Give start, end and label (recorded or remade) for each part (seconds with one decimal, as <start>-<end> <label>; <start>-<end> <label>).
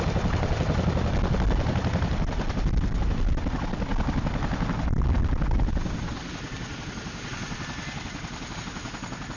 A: 0.0-9.4 recorded